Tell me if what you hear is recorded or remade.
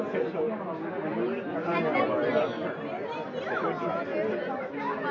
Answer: recorded